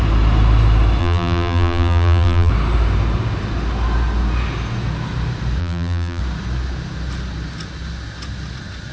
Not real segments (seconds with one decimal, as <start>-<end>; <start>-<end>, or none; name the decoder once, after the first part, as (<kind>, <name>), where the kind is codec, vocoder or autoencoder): 1.0-2.5 (vocoder, BigVGAN v2); 5.6-6.2